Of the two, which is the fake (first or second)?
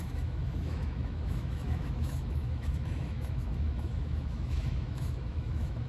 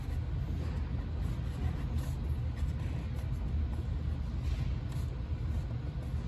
first